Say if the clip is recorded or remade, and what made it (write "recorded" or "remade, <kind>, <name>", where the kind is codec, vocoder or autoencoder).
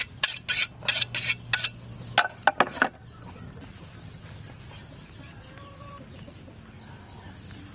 recorded